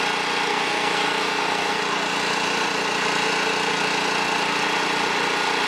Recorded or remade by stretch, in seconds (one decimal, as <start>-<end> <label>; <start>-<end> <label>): 0.0-0.5 recorded; 0.5-1.8 remade; 1.8-5.7 recorded